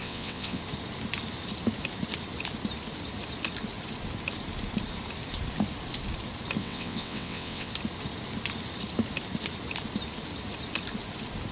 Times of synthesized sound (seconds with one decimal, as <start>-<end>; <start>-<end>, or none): 0.0-0.6; 6.6-7.7